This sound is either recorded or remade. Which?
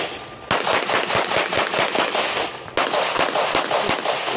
recorded